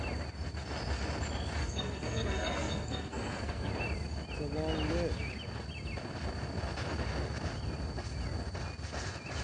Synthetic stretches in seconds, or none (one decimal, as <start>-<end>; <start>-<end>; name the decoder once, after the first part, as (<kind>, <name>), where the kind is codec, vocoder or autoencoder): 1.6-3.7 (codec, SNAC)